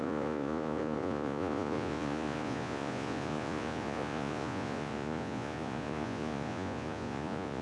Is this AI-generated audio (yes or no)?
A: yes